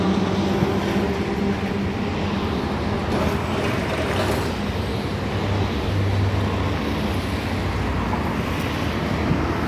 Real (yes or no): yes